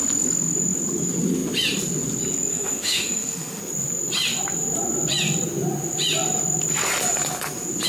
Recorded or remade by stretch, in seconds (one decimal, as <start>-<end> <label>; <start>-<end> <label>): 0.0-2.5 recorded; 2.5-3.6 remade; 3.6-7.9 recorded